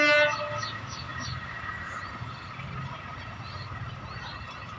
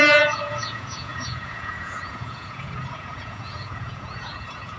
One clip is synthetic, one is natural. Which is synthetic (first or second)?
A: second